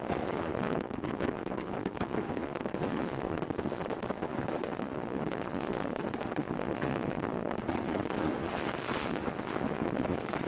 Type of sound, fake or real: fake